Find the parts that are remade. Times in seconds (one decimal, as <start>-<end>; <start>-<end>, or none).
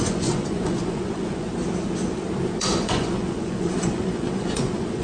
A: 0.0-1.5; 2.5-5.0